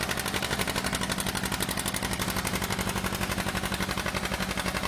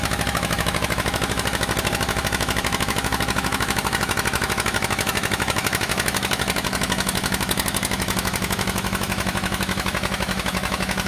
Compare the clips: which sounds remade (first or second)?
second